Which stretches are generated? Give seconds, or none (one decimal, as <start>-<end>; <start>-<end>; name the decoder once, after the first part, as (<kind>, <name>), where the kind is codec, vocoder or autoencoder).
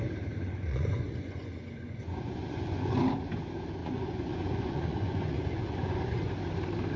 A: 0.4-3.0 (vocoder, Vocos); 3.8-6.3